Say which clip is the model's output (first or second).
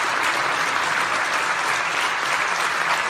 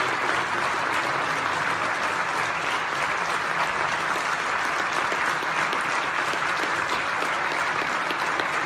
first